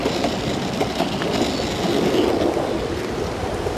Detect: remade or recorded recorded